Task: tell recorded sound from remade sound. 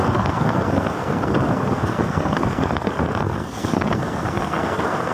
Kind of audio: remade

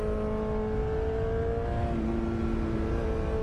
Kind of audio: recorded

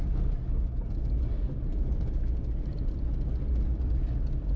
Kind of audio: recorded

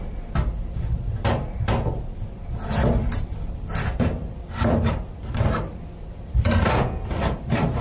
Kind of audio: remade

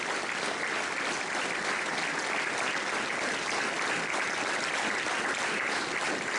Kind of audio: recorded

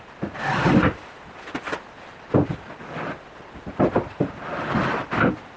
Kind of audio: recorded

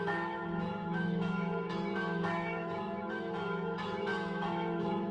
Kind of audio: remade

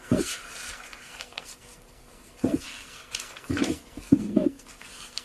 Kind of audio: remade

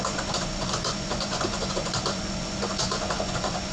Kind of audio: remade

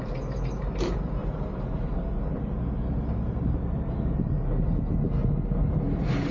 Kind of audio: recorded